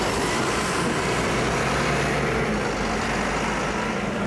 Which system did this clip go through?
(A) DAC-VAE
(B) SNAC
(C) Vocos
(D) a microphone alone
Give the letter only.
D